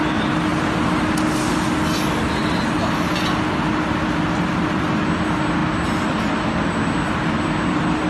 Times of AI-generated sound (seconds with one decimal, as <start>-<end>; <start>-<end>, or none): none